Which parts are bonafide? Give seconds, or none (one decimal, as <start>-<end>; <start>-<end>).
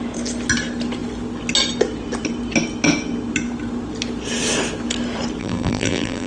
0.0-5.4